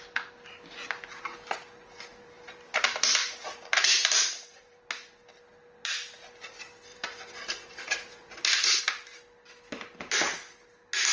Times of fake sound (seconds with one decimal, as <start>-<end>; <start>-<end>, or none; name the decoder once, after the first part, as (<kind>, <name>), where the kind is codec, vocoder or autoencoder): 2.1-4.8 (vocoder, BigVGAN v2); 6.9-8.8